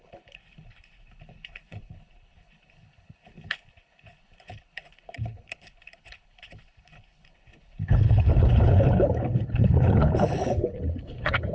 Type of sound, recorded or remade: remade